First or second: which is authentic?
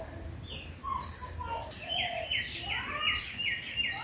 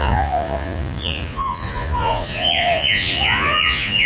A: first